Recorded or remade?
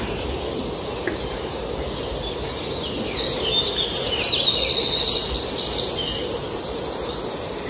recorded